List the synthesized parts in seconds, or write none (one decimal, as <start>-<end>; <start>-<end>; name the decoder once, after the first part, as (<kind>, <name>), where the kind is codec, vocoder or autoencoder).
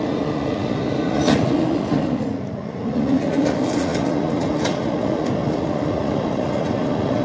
0.0-7.2 (vocoder, Vocos)